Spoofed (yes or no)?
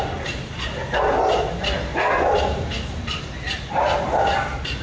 no